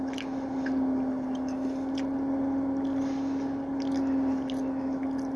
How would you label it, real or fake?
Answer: real